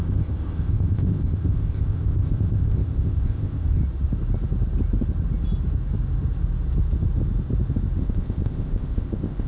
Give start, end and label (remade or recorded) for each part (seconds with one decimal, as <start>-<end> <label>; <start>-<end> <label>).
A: 0.0-3.8 remade; 3.8-8.0 recorded; 8.0-9.5 remade